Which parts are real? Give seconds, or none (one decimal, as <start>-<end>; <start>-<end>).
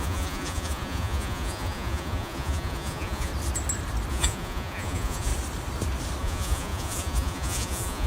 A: 3.3-4.1; 5.3-6.2